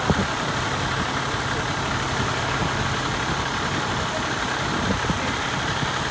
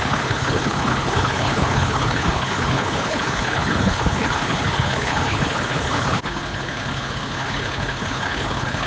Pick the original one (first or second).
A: first